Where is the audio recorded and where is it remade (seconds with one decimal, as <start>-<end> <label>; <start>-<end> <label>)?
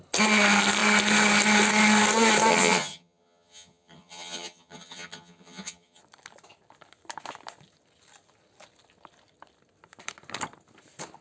0.0-2.5 recorded; 2.5-6.0 remade; 6.0-11.2 recorded